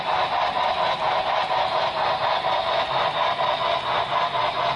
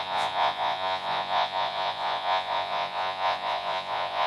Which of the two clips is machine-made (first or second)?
second